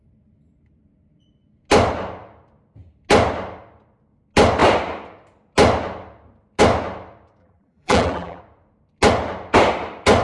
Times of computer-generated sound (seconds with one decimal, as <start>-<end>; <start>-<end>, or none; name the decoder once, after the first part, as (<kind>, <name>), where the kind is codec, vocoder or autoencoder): 7.4-8.4 (vocoder, BigVGAN v2)